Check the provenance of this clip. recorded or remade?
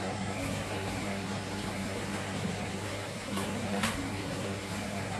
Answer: remade